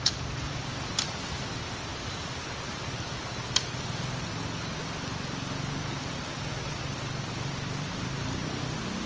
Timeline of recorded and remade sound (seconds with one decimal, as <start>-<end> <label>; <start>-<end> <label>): 0.0-9.1 recorded